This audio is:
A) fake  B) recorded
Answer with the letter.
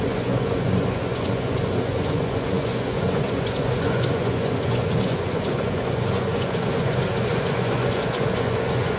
A